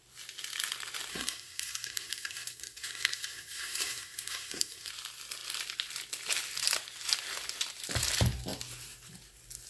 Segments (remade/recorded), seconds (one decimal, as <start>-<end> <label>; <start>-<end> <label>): 0.0-1.1 recorded; 1.1-4.9 remade; 4.9-9.7 recorded